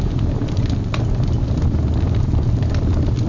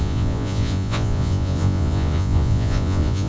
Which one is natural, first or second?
first